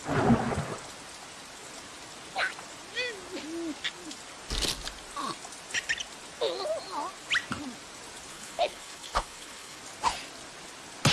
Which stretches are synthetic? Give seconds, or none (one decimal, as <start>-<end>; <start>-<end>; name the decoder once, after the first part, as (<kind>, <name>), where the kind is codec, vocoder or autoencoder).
8.3-9.8 (codec, HILCodec)

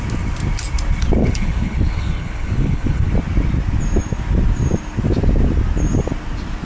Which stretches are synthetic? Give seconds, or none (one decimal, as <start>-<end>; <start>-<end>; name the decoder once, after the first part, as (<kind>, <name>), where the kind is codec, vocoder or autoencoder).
1.2-3.1 (codec, HILCodec)